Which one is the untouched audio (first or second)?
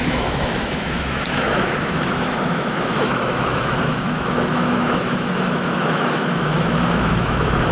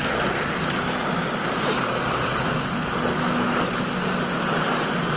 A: second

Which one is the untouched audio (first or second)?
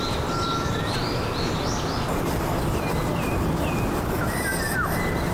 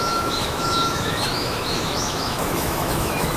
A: first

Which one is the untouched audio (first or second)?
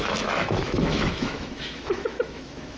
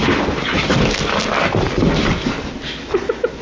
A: second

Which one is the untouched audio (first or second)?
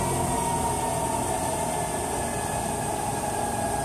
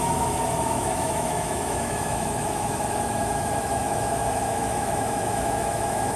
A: first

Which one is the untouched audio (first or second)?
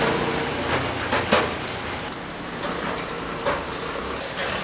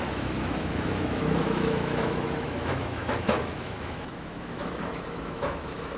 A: first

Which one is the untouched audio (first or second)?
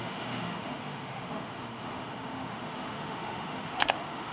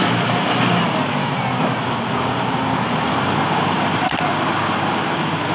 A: second